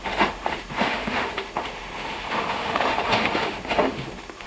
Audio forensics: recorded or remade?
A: remade